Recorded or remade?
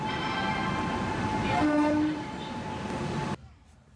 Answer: recorded